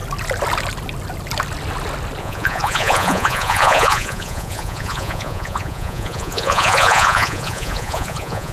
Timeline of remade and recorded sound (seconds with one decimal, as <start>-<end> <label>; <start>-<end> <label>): 0.0-2.2 recorded; 2.2-8.5 remade